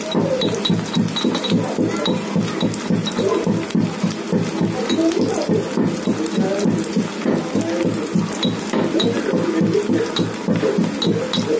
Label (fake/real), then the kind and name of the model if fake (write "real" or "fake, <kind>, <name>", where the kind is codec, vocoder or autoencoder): real